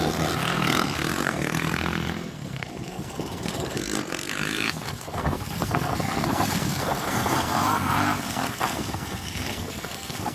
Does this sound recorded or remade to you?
remade